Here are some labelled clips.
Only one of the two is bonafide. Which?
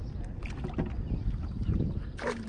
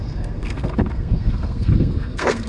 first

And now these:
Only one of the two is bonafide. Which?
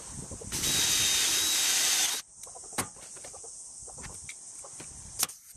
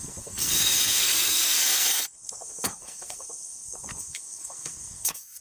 first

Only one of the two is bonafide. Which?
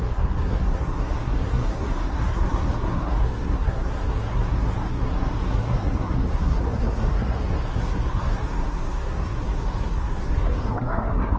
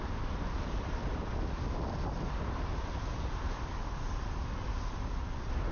second